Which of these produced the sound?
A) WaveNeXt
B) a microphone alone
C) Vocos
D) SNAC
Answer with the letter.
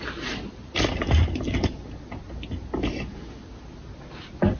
B